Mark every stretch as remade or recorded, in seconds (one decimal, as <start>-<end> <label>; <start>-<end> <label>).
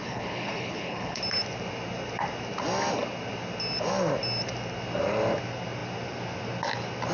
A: 0.0-1.2 remade; 1.2-7.1 recorded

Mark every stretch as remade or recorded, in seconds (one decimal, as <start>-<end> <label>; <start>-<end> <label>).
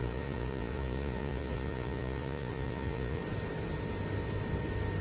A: 0.0-3.2 remade; 3.2-5.0 recorded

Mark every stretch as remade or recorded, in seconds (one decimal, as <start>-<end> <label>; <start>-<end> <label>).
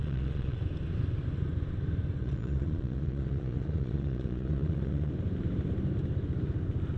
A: 0.0-0.6 remade; 0.6-2.2 recorded; 2.2-5.1 remade; 5.1-7.0 recorded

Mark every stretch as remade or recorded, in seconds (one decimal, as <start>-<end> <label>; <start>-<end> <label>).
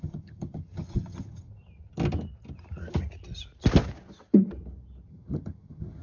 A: 0.0-1.5 remade; 1.5-5.1 recorded; 5.1-6.0 remade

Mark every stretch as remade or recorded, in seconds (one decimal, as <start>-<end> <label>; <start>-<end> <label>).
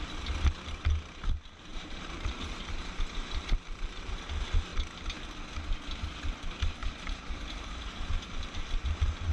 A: 0.0-1.7 recorded; 1.7-4.2 remade; 4.2-6.8 recorded; 6.8-8.1 remade; 8.1-9.3 recorded